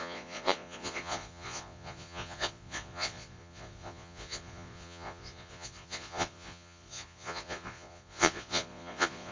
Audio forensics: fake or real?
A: fake